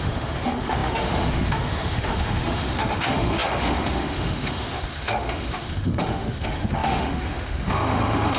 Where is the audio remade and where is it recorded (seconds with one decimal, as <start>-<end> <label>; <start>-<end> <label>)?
0.0-8.4 remade